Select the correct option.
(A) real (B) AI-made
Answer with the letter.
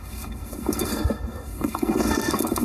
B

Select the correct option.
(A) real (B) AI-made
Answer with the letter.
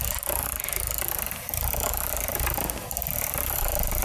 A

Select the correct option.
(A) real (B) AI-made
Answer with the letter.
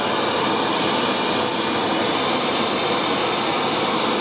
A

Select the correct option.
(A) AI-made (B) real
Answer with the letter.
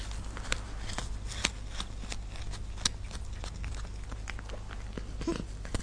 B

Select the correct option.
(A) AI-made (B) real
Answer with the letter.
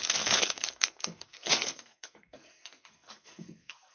A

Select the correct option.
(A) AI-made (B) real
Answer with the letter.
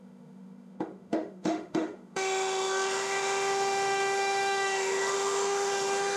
A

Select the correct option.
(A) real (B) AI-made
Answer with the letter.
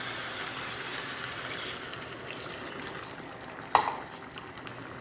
A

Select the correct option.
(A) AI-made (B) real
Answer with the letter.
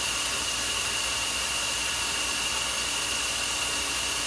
B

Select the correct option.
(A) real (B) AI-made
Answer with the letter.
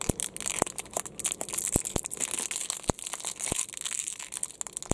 A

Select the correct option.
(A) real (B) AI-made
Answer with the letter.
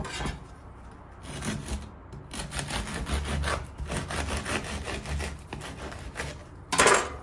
A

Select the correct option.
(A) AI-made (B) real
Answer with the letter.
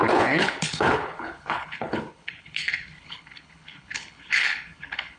A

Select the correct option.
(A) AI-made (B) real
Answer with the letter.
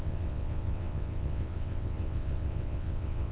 A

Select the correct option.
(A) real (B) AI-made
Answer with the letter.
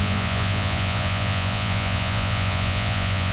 B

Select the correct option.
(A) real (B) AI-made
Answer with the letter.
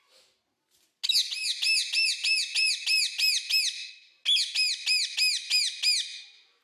A